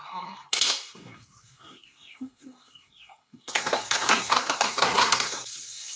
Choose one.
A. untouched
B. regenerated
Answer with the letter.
B